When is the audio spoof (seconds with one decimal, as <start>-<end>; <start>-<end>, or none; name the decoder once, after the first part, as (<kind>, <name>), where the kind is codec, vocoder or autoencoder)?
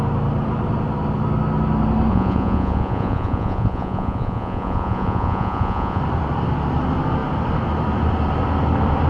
2.1-6.0 (vocoder, Vocos)